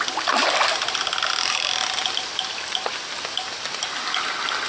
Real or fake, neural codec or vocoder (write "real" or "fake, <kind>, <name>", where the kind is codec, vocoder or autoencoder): real